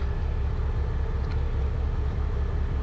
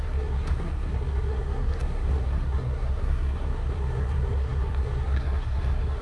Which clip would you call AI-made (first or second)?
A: second